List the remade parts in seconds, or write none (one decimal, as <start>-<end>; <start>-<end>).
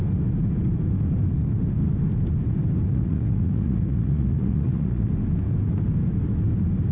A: 2.9-5.1